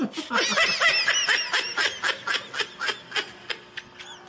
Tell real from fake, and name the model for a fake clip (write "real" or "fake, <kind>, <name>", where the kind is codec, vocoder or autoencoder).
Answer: real